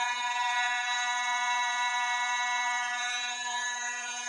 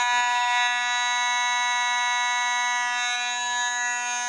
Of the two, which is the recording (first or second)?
second